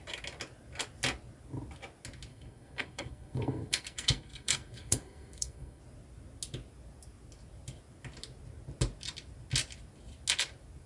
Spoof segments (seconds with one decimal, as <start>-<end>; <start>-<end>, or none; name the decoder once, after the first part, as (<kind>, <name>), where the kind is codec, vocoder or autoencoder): 2.3-5.8 (codec, SNAC)